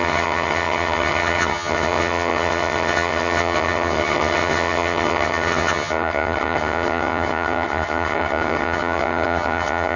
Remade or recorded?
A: remade